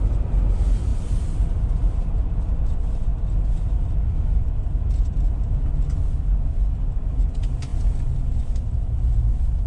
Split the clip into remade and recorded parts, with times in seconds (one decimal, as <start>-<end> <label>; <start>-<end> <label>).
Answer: 0.0-0.9 recorded; 0.9-2.3 remade; 2.3-9.7 recorded